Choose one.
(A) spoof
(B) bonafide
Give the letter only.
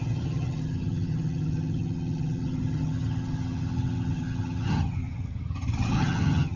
A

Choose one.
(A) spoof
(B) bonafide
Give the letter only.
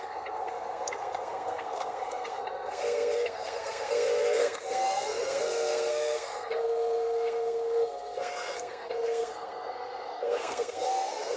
A